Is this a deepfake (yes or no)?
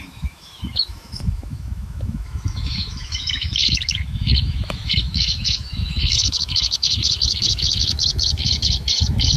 yes